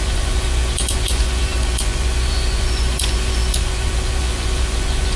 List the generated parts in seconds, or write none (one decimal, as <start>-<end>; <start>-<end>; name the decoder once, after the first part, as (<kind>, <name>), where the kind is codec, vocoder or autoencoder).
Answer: 0.0-5.2 (vocoder, Vocos)